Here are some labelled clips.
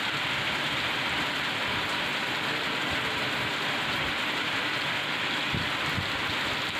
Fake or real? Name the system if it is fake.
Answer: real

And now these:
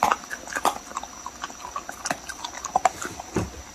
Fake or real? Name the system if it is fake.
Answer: real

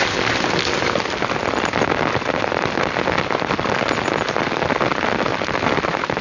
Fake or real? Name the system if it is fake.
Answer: real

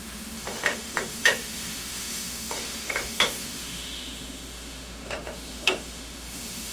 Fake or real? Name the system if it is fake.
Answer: fake, autoencoder, DAC-VAE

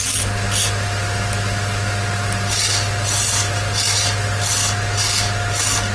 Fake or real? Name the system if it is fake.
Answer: real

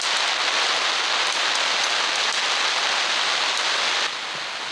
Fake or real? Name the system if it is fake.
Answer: real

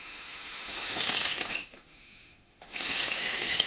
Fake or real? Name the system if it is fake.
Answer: fake, autoencoder, DAC-VAE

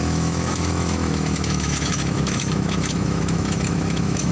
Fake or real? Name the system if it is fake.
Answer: fake, autoencoder, DAC-VAE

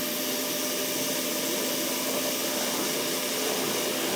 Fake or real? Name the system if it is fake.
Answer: real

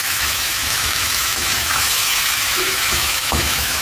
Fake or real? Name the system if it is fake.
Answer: fake, autoencoder, DAC-VAE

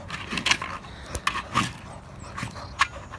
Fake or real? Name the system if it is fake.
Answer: real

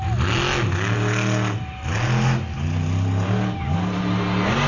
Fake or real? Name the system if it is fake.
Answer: real